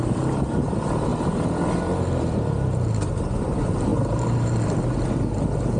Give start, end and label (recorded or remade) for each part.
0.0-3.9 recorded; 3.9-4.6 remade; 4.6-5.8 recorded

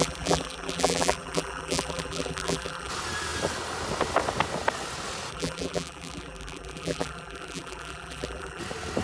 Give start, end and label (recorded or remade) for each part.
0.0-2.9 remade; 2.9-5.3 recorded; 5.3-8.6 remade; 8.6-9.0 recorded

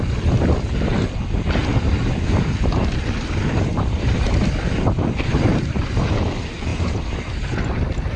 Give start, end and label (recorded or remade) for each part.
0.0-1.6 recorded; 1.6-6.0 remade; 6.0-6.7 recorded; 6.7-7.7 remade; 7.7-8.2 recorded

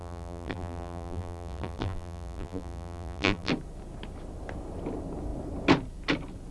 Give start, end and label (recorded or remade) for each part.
0.0-3.5 remade; 3.5-6.5 recorded